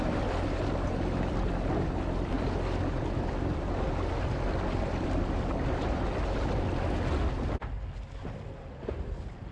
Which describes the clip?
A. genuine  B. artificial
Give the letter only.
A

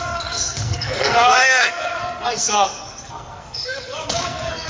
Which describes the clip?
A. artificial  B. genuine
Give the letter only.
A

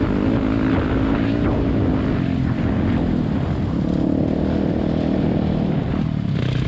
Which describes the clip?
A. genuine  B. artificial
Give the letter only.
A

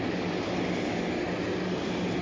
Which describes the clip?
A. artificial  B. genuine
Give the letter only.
B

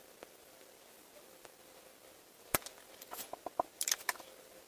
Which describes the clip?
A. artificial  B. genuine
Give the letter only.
B